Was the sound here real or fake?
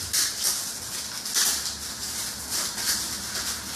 real